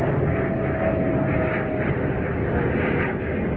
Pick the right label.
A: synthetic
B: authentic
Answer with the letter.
B